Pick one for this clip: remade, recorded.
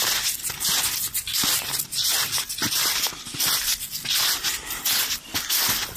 recorded